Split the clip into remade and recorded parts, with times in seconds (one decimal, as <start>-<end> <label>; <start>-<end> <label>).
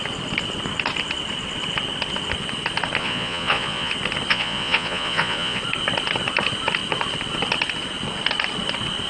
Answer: 0.0-3.0 recorded; 3.0-3.9 remade; 3.9-4.3 recorded; 4.3-5.6 remade; 5.6-9.1 recorded